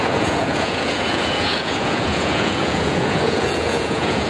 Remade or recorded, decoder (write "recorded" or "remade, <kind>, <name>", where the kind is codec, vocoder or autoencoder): remade, vocoder, Vocos